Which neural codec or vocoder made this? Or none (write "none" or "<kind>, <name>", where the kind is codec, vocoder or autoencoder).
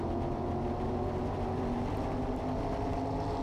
none